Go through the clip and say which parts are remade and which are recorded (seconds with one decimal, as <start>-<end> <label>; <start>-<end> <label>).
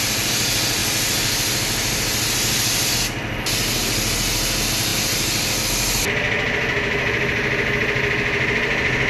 0.0-9.1 recorded